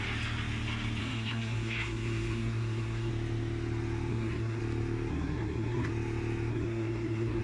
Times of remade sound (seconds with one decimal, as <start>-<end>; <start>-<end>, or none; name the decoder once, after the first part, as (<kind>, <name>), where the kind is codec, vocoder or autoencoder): 1.0-3.1 (codec, SNAC); 4.1-4.6; 5.1-5.9; 6.5-7.4